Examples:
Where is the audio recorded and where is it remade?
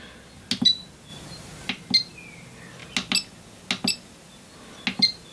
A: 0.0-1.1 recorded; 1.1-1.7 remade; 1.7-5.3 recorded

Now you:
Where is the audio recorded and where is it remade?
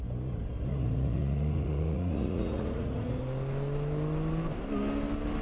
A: 0.0-0.7 recorded; 0.7-3.2 remade; 3.2-5.4 recorded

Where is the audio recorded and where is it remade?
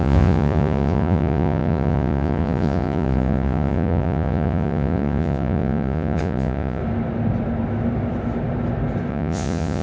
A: 0.0-6.8 remade; 6.8-9.1 recorded; 9.1-9.8 remade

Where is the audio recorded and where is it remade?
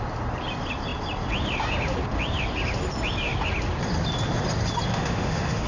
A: 0.0-4.9 recorded; 4.9-5.7 remade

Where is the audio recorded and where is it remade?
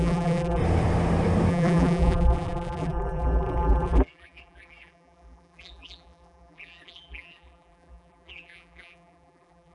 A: 0.0-0.6 remade; 0.6-1.5 recorded; 1.5-9.7 remade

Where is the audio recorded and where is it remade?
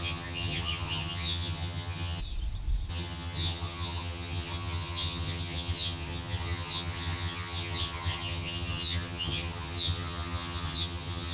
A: 0.0-2.2 remade; 2.2-2.9 recorded; 2.9-11.3 remade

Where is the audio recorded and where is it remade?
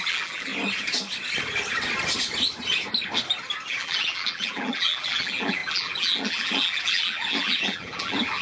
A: 0.0-0.5 remade; 0.5-3.7 recorded; 3.7-8.4 remade